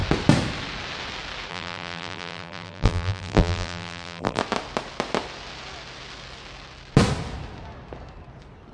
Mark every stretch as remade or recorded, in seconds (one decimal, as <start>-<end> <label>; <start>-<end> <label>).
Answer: 0.0-1.5 recorded; 1.5-4.4 remade; 4.4-8.7 recorded